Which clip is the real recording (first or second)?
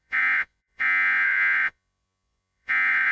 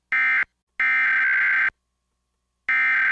second